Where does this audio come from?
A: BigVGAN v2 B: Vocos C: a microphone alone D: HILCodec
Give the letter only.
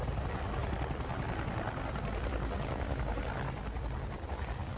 C